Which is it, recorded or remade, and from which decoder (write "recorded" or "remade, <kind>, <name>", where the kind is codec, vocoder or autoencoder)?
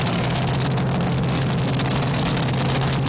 recorded